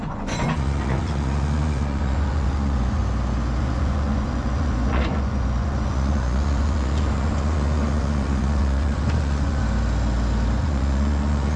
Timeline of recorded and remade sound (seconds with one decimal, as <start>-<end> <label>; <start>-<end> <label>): 0.0-3.0 remade; 3.0-3.6 recorded; 3.6-9.6 remade; 9.6-10.6 recorded; 10.6-11.6 remade